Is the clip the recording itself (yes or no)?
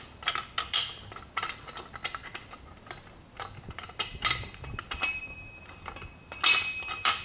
yes